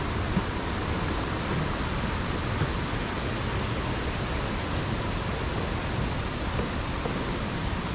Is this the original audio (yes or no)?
yes